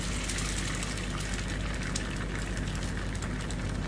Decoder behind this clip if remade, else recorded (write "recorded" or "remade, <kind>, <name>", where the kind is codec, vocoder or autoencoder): recorded